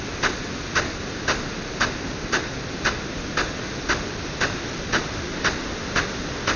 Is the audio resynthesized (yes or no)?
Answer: no